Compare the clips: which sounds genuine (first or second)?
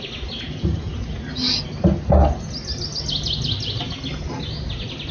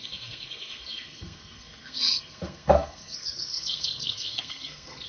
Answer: first